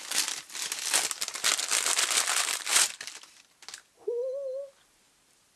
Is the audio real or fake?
real